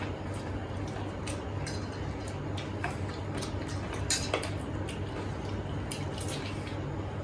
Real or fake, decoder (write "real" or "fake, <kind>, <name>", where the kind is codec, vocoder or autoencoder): real